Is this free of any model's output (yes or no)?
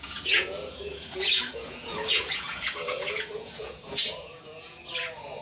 no